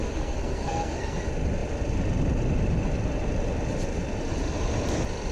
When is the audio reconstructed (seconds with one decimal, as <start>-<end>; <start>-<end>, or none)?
0.0-1.2